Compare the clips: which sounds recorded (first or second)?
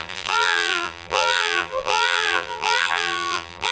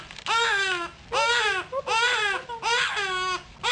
second